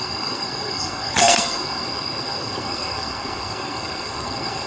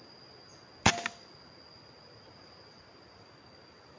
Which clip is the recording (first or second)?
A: second